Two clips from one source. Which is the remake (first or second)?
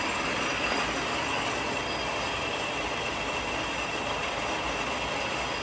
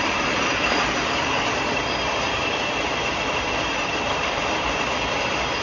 second